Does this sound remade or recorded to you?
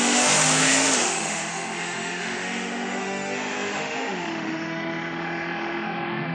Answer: remade